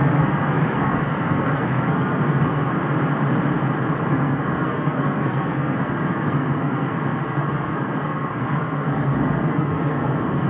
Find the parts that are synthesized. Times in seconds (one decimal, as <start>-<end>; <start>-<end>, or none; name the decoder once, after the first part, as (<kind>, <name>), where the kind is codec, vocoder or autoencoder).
0.0-2.7 (codec, SNAC); 4.1-10.5